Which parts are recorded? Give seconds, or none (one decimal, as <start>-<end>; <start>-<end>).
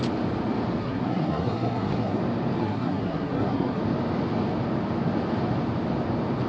0.0-0.8; 2.2-2.6; 3.8-6.5